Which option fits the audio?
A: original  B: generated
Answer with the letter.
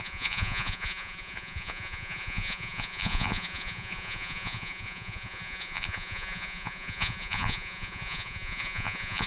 B